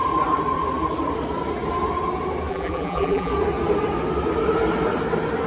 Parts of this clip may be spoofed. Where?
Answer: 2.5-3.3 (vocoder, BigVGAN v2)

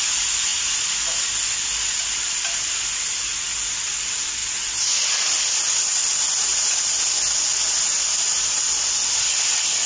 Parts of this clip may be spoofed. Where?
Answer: 0.5-1.3 (vocoder, Vocos)

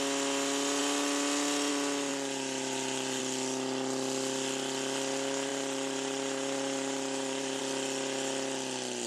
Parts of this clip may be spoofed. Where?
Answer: 2.1-3.2 (vocoder, BigVGAN v2); 5.5-7.6

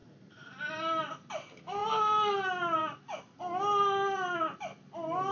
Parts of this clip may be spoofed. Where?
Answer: 0.0-1.0 (vocoder, BigVGAN v2)

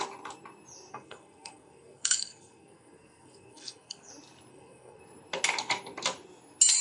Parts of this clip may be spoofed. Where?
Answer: 0.9-4.1 (codec, SNAC); 4.5-5.0

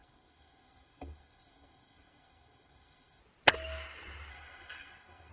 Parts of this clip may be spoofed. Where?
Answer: 0.0-3.2 (codec, SNAC); 4.3-5.3